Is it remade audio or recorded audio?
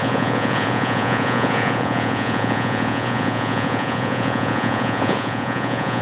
remade